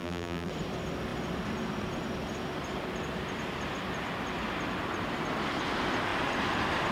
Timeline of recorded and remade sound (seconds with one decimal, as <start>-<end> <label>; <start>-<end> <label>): 0.0-0.5 remade; 0.5-6.9 recorded